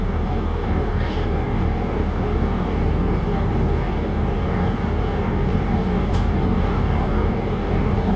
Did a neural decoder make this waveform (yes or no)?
yes